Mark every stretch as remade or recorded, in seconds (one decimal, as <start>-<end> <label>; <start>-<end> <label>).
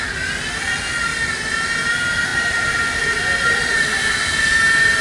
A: 0.0-5.0 recorded